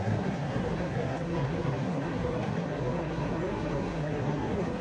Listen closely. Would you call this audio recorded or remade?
remade